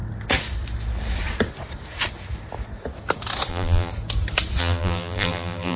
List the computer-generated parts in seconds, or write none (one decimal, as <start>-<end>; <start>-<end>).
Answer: 3.5-3.9; 4.6-5.8